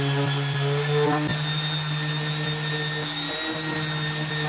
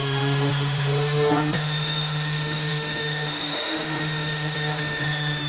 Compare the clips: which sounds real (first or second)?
first